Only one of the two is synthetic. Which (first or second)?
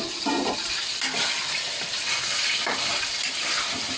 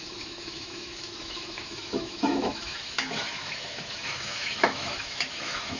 second